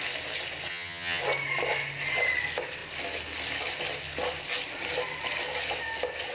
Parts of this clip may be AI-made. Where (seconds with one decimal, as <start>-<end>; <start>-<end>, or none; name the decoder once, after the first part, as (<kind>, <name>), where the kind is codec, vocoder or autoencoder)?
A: 0.7-1.2 (vocoder, HiFi-GAN)